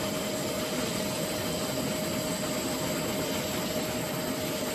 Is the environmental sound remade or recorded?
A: recorded